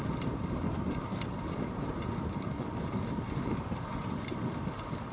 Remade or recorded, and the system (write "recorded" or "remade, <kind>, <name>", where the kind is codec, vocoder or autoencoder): remade, vocoder, BigVGAN v2